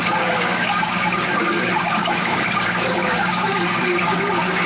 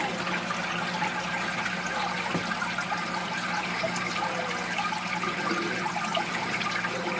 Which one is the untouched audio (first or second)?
second